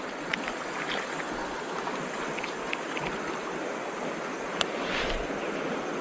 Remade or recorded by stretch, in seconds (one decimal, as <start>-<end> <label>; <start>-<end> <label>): 0.0-6.0 recorded